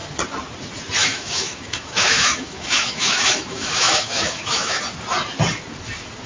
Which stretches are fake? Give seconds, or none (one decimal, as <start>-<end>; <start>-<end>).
1.0-4.8